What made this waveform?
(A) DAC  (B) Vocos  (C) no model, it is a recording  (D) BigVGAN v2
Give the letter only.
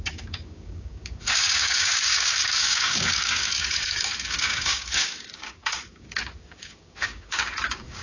A